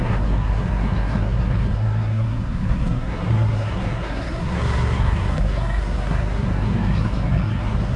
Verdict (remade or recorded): remade